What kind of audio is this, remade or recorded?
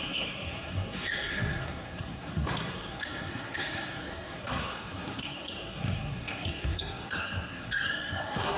remade